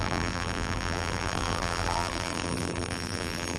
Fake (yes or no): yes